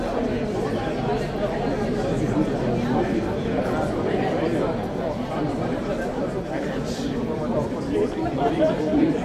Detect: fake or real real